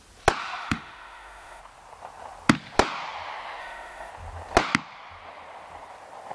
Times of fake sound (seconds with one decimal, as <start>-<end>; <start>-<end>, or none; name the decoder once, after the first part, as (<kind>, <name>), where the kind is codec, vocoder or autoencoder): 0.4-1.6 (autoencoder, DAC-VAE); 3.6-4.1